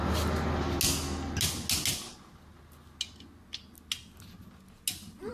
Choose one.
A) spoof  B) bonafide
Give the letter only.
B